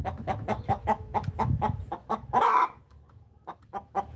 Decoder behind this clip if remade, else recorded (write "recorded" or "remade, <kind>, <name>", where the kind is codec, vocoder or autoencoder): remade, autoencoder, DAC-VAE